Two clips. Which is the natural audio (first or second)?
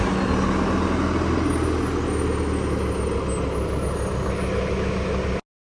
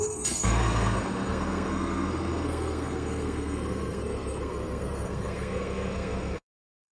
first